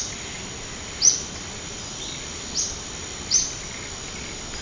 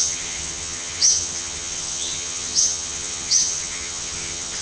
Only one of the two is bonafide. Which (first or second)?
first